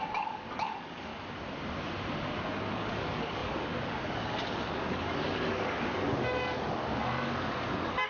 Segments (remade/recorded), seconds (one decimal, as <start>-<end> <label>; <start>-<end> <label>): 0.0-1.1 remade; 1.1-2.7 recorded; 2.7-8.1 remade